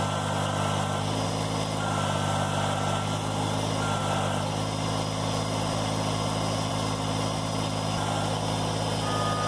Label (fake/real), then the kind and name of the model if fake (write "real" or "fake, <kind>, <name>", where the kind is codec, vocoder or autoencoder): real